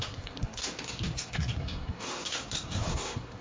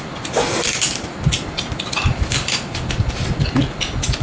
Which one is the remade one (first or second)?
first